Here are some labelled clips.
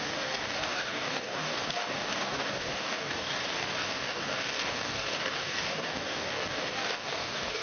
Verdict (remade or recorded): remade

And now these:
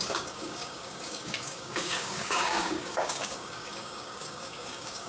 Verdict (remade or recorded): remade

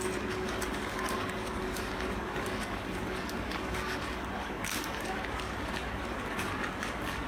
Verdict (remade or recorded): remade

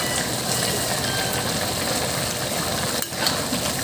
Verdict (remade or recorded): recorded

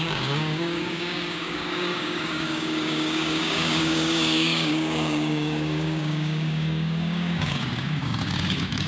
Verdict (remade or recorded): remade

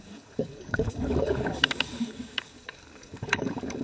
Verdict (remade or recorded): remade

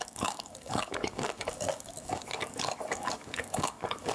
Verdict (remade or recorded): remade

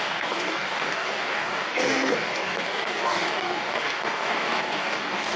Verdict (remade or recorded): remade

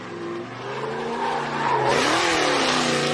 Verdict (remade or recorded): recorded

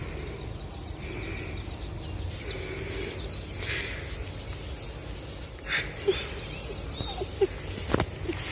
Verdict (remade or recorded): recorded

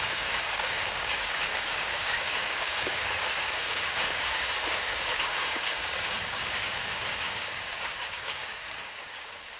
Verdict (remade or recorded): remade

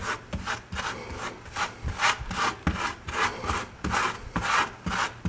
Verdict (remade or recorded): recorded